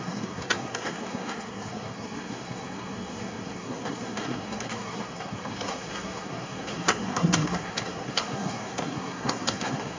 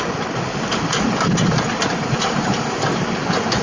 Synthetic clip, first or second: first